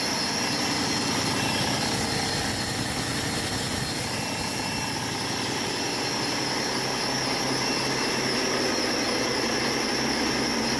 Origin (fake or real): real